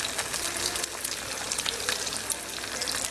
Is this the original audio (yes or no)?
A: yes